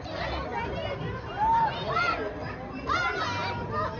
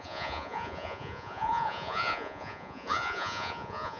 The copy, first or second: second